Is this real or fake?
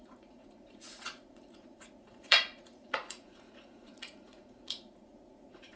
fake